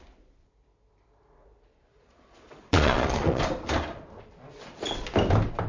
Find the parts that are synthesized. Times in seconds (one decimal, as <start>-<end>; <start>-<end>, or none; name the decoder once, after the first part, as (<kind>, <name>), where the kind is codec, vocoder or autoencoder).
1.7-3.4 (vocoder, Vocos)